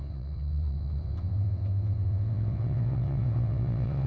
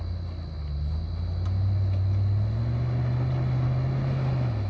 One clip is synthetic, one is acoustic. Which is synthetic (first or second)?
first